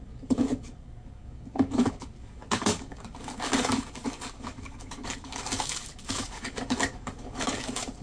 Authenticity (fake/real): fake